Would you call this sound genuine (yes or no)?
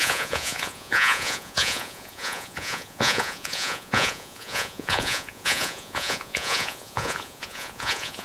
no